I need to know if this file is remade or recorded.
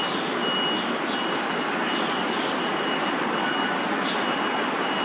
recorded